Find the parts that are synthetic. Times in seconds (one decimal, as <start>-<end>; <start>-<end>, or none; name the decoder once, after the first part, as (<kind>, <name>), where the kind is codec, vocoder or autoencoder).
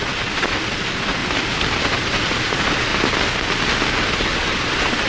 0.0-1.2 (vocoder, Vocos); 1.8-2.9; 4.0-5.1